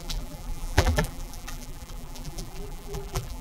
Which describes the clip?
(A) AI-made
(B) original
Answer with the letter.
A